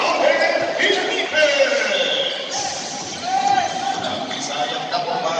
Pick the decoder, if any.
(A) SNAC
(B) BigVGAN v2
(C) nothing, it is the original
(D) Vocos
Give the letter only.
B